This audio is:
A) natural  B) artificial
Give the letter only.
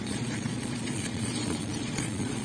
B